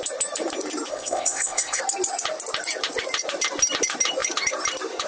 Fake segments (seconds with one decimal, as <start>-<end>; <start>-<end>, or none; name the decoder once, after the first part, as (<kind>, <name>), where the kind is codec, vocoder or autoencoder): 0.9-1.8 (codec, ZipCodec)